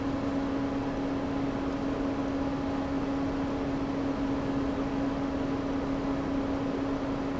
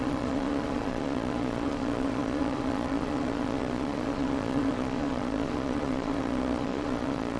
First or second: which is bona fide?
first